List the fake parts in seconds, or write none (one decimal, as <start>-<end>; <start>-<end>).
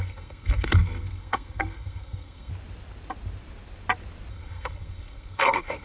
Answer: 0.0-2.5; 4.3-5.8